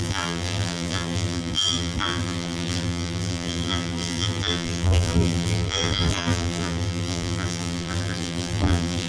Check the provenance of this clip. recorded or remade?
remade